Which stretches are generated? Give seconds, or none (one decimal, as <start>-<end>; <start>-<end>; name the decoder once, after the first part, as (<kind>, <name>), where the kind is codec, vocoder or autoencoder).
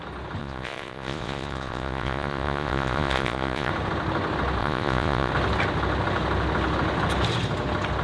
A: 0.4-3.7 (vocoder, Vocos); 4.6-5.3